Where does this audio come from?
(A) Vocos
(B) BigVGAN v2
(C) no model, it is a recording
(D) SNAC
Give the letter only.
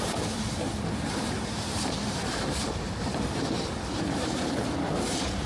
B